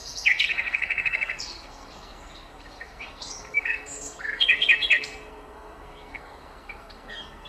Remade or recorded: remade